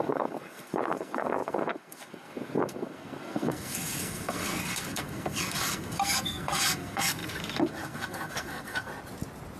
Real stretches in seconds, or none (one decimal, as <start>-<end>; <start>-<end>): 8.9-9.6